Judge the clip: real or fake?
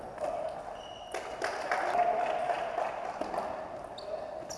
real